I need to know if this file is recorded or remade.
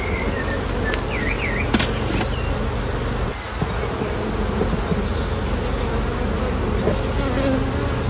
recorded